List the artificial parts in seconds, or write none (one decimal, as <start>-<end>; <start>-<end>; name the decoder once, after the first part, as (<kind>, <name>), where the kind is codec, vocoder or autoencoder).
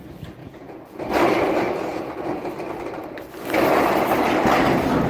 0.4-1.0 (vocoder, Vocos); 1.9-2.5